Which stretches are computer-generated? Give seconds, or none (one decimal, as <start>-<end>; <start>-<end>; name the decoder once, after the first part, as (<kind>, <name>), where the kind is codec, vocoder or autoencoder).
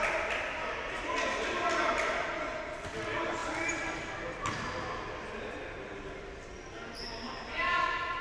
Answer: none